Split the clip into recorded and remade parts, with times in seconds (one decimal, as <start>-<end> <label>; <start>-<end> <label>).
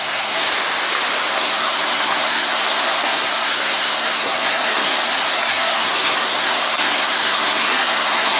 0.0-0.5 remade; 0.5-1.3 recorded; 1.3-8.4 remade